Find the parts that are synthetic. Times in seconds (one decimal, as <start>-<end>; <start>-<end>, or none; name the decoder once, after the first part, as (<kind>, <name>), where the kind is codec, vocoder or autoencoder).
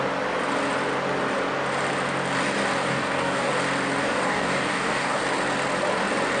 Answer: 2.9-3.5 (codec, DAC); 4.0-5.2